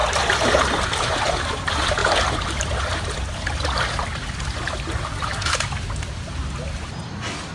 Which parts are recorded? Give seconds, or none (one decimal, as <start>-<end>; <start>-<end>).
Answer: 0.0-7.5